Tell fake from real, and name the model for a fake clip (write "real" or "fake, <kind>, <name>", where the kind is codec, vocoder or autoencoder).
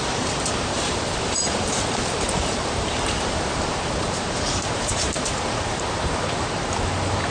fake, vocoder, BigVGAN v2